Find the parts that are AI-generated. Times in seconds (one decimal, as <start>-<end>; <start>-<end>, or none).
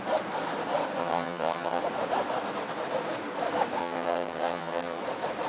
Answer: 1.0-1.8; 3.8-5.0